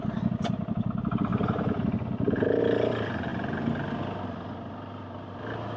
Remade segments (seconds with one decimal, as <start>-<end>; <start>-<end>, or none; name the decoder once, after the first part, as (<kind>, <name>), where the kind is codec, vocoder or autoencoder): none